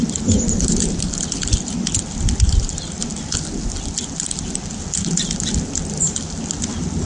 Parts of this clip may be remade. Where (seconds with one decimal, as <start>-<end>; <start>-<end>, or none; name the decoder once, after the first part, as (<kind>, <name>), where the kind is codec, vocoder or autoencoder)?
none